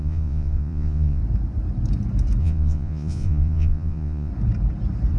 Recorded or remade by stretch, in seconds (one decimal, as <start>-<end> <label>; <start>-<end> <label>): 0.0-1.2 remade; 1.2-2.4 recorded; 2.4-4.3 remade; 4.3-5.2 recorded